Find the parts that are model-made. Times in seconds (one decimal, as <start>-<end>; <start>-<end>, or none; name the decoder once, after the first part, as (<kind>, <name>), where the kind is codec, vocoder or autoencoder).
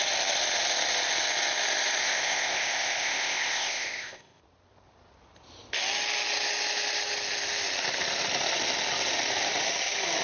2.0-4.4 (codec, ZipCodec)